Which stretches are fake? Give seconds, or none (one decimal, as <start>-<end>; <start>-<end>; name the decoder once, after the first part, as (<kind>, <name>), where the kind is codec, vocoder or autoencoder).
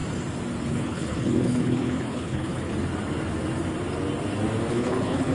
0.7-2.7 (codec, HILCodec); 4.7-5.3